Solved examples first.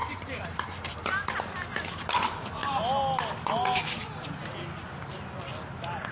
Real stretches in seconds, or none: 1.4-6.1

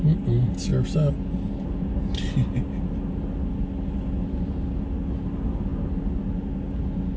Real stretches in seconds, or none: 0.0-7.2

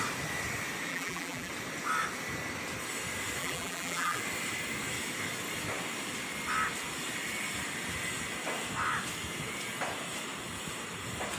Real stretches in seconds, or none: 0.0-0.9; 1.5-3.4; 4.2-11.4

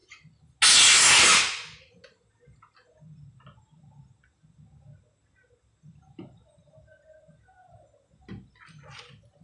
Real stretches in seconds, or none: 0.0-9.4

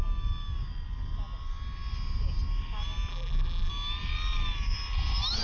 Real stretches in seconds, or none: 0.0-3.1; 3.7-5.4